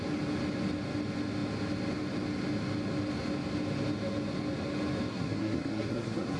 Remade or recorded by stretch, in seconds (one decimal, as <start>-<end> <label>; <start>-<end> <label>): 0.0-5.1 recorded; 5.1-6.4 remade